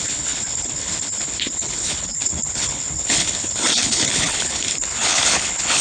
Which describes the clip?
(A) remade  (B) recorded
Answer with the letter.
A